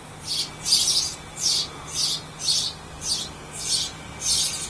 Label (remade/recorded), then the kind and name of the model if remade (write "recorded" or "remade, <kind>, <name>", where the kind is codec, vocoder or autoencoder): recorded